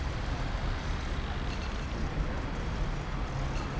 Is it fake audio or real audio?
real